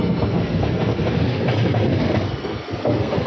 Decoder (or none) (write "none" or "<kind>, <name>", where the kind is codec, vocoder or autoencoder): codec, SNAC